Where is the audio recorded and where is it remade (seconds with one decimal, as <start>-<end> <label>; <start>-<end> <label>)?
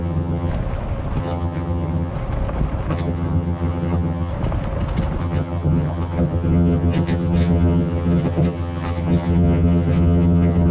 0.0-0.5 remade; 0.5-1.2 recorded; 1.2-2.1 remade; 2.1-2.9 recorded; 2.9-4.3 remade; 4.3-5.2 recorded; 5.2-10.7 remade